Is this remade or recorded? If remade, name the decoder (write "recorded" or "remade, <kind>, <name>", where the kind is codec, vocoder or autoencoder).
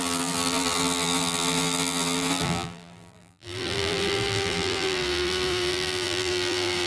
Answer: remade, vocoder, BigVGAN v2